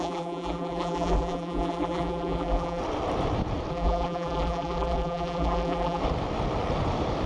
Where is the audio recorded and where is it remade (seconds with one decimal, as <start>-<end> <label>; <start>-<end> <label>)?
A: 0.0-2.8 remade; 2.8-3.7 recorded; 3.7-6.0 remade; 6.0-7.3 recorded